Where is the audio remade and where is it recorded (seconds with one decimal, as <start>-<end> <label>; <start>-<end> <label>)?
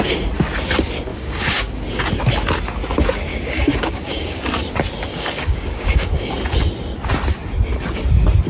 0.0-1.1 recorded; 1.1-2.0 remade; 2.0-3.3 recorded; 3.3-4.4 remade; 4.4-5.1 recorded; 5.1-6.3 remade; 6.3-8.5 recorded